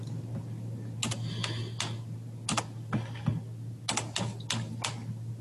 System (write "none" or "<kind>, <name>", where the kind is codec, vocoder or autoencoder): none